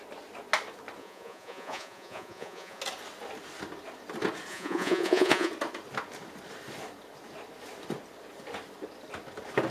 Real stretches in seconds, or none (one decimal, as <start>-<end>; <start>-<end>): 0.0-1.0; 2.8-4.5; 5.5-9.7